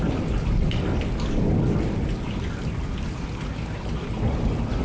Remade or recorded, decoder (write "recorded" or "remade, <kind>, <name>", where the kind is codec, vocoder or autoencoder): recorded